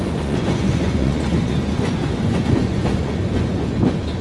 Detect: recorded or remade remade